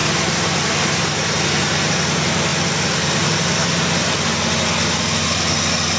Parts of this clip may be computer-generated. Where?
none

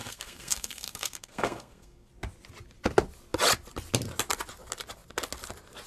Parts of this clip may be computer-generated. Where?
0.0-2.1 (codec, SNAC)

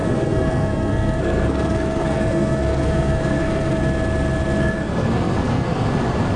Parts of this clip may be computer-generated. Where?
0.0-3.8 (codec, SNAC); 4.6-5.9

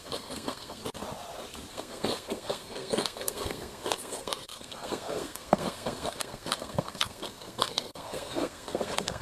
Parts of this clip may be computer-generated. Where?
0.0-0.8 (codec, SNAC); 1.7-9.2

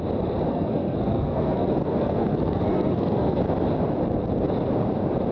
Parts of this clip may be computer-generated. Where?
0.5-3.4 (codec, SNAC)

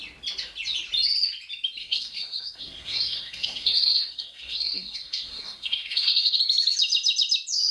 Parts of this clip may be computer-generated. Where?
1.8-6.4 (codec, SNAC)

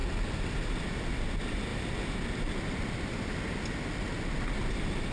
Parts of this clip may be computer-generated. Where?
none

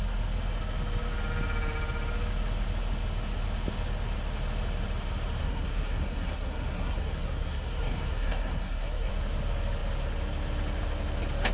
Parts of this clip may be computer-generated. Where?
5.4-9.1 (codec, SNAC)